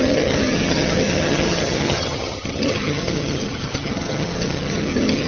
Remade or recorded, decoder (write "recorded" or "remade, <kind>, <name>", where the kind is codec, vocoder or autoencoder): remade, vocoder, HiFi-GAN